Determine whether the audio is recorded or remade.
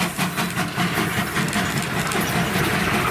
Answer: recorded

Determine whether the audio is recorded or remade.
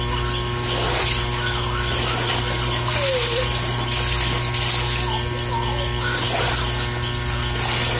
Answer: recorded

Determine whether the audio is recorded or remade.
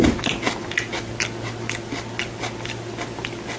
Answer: recorded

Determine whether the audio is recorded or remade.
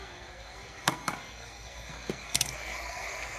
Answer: remade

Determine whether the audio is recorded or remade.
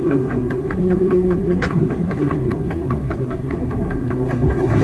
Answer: remade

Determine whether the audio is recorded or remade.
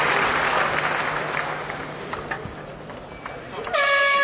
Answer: recorded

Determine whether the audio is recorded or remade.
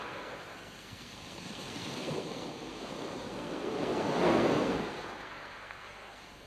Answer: remade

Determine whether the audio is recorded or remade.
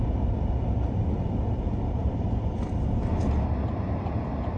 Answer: recorded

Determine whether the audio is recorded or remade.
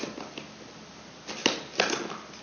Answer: recorded